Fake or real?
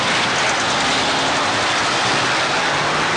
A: real